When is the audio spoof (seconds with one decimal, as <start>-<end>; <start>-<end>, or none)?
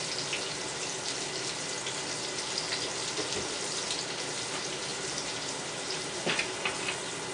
4.9-6.4